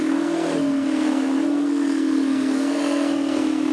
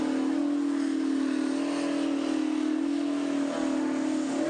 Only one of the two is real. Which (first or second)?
second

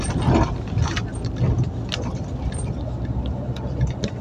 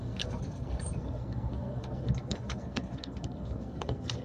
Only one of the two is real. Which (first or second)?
first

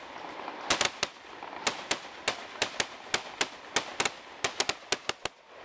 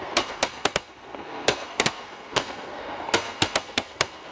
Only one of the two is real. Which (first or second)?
first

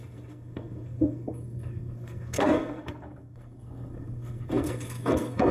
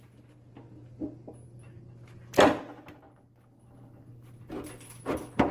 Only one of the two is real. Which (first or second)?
second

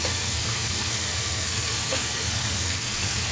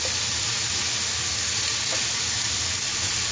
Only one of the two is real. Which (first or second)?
second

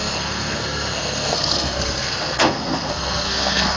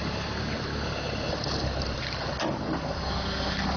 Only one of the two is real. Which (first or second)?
second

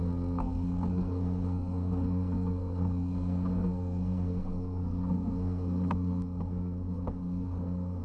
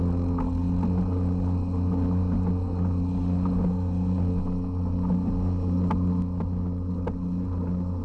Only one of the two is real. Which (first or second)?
second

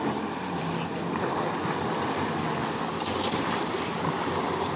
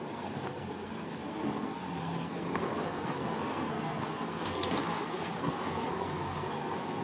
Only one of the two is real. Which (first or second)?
first